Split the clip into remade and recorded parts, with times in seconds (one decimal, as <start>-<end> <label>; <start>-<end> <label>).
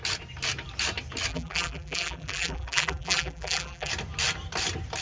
0.0-1.3 recorded; 1.3-3.9 remade; 3.9-5.0 recorded